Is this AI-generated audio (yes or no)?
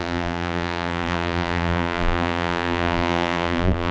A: yes